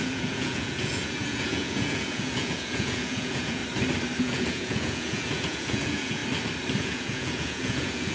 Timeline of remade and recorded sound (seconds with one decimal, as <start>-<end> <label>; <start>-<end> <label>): 0.0-3.6 remade; 3.6-4.2 recorded; 4.2-6.2 remade; 6.2-6.8 recorded; 6.8-8.1 remade